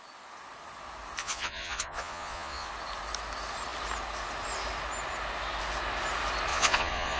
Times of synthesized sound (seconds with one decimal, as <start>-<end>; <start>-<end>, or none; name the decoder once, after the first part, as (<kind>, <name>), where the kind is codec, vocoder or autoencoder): 1.2-2.7 (vocoder, Vocos); 6.5-7.2